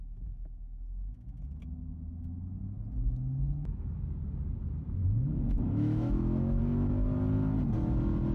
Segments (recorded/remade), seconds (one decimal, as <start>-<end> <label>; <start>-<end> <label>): 0.0-5.0 recorded; 5.0-6.6 remade; 6.6-8.3 recorded